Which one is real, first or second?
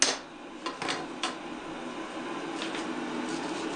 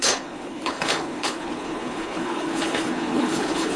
first